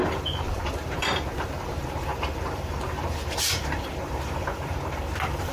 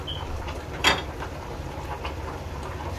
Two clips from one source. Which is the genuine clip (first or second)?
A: second